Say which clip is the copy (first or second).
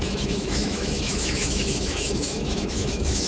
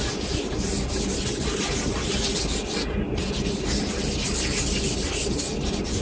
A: first